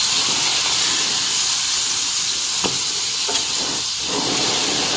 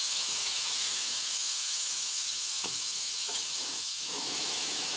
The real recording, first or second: first